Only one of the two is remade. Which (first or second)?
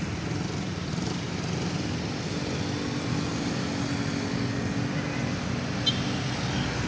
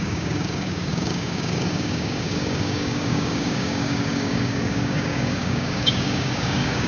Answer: second